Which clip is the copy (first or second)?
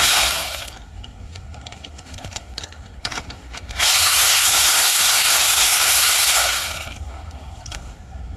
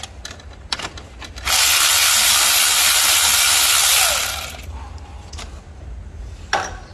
first